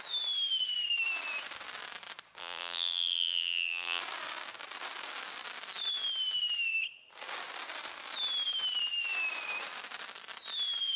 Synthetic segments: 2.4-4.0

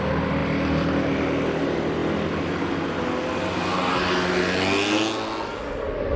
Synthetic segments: none

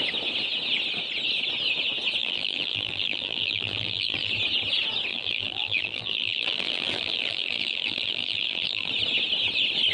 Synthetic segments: 2.2-4.3; 5.1-8.9

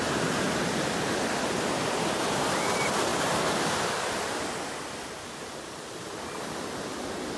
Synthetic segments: 0.0-3.1; 6.6-7.4

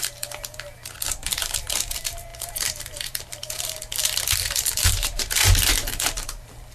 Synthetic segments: 0.0-6.7

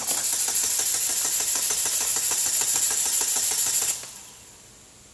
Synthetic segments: none

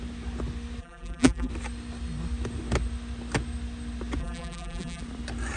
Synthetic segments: 0.8-1.5; 4.2-5.0